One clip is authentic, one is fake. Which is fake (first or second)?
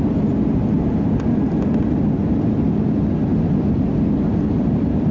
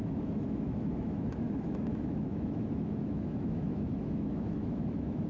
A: second